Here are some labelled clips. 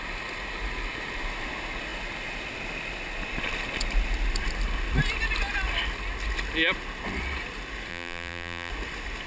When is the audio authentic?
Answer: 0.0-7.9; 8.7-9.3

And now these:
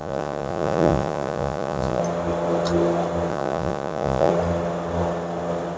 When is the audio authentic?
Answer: 2.0-3.3; 4.3-5.8

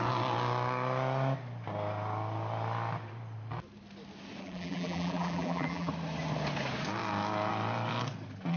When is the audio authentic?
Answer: 0.0-4.4; 5.9-8.6

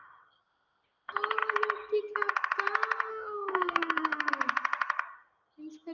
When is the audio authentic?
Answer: 0.0-3.1; 4.3-5.9

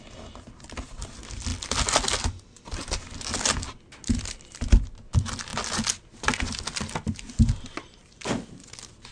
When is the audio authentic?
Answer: 0.0-8.0